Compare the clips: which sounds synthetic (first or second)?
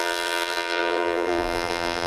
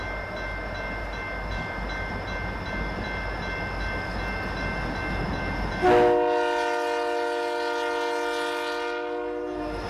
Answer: first